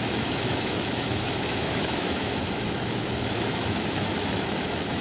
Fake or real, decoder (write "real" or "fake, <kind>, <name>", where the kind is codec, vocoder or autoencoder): fake, autoencoder, DAC-VAE